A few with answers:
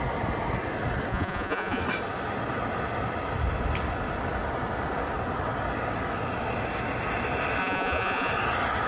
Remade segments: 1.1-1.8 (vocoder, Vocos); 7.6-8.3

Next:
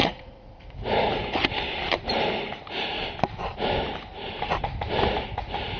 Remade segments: 0.0-1.1 (vocoder, Vocos)

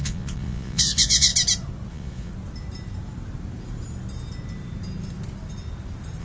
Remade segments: 0.0-1.3 (vocoder, Vocos); 1.9-2.3